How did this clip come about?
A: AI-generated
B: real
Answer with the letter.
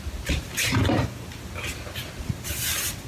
B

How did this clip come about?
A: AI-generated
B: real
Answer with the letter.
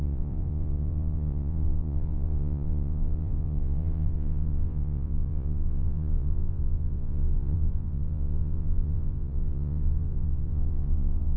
A